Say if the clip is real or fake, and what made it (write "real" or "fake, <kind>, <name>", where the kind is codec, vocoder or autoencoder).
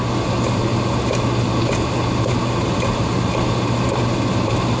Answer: real